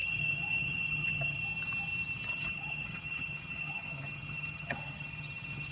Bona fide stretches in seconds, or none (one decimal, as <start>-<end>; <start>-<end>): 1.4-2.3